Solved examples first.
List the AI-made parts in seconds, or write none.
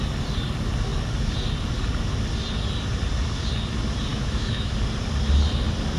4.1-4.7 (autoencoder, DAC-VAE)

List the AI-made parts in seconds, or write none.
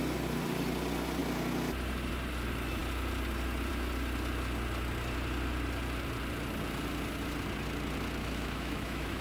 8.2-9.2 (autoencoder, DAC-VAE)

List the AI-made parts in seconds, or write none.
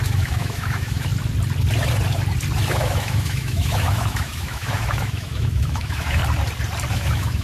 0.0-1.1 (autoencoder, DAC-VAE); 2.7-6.2; 6.9-7.4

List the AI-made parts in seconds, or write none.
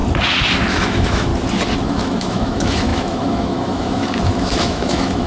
0.7-1.3 (autoencoder, DAC-VAE); 1.8-5.3